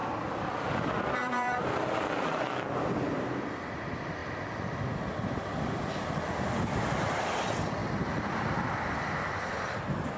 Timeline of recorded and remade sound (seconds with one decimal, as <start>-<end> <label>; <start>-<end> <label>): 0.0-1.9 remade; 1.9-7.8 recorded; 7.8-8.6 remade; 8.6-10.2 recorded